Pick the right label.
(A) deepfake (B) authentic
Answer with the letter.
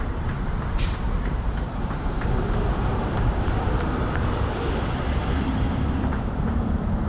A